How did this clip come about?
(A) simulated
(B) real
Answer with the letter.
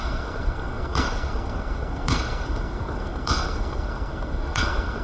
A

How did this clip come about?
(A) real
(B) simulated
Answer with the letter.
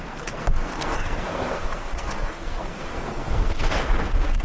B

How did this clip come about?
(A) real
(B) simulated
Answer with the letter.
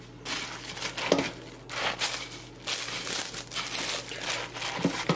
A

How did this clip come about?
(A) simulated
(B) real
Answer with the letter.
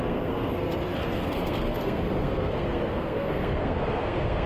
A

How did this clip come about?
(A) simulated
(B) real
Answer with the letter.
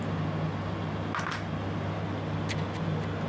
B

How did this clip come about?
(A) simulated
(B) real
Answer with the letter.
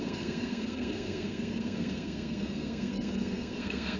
A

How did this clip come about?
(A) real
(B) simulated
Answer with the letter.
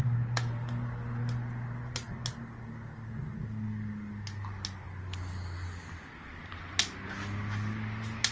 A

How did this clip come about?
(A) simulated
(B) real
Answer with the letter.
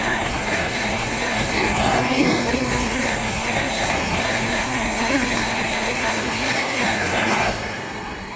A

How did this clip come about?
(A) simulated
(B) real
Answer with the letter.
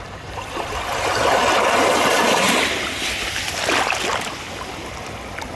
B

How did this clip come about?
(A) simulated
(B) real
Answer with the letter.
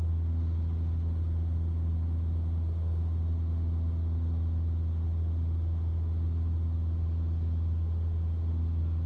B